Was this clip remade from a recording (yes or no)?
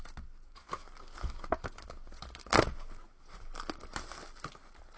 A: no